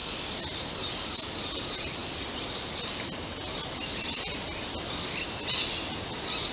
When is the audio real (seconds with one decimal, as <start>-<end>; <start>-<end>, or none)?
0.0-6.5